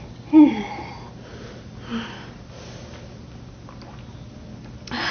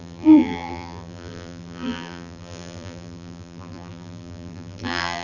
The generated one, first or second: second